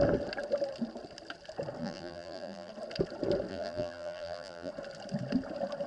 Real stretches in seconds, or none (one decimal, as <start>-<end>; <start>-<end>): 0.0-1.8; 2.7-3.5; 4.7-5.9